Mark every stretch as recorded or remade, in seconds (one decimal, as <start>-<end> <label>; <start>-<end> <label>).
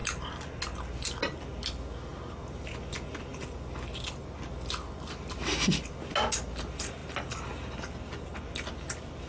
0.0-9.3 recorded